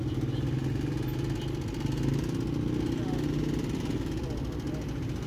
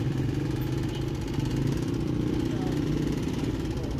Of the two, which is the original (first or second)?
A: first